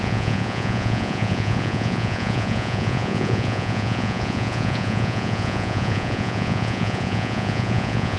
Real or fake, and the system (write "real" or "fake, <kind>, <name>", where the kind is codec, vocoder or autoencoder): fake, vocoder, Vocos